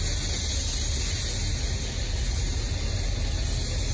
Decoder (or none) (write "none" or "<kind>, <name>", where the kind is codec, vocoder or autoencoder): none